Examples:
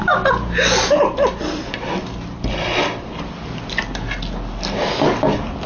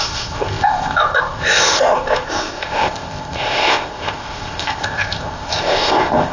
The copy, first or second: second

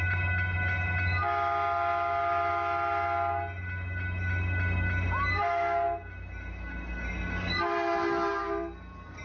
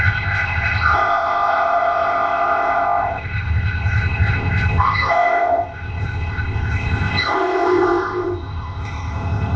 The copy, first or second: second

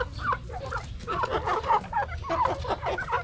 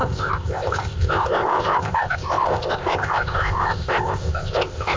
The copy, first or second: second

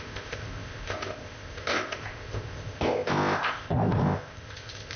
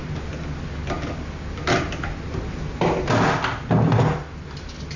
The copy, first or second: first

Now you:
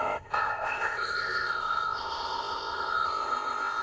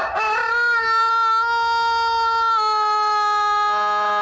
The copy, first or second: first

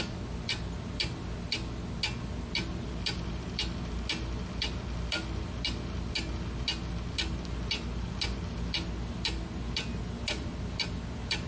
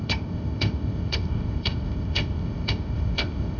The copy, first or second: second